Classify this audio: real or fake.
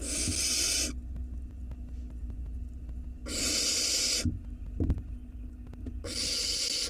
real